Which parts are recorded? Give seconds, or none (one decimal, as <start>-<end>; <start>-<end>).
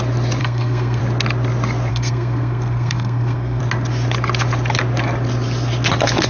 0.0-0.4; 1.0-1.9; 3.6-6.3